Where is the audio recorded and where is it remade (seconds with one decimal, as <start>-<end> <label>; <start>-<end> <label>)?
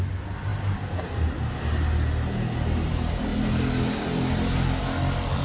0.0-5.4 recorded